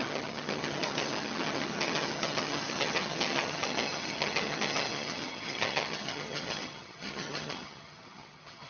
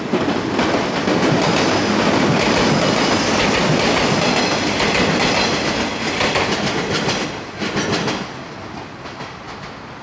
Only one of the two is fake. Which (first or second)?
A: first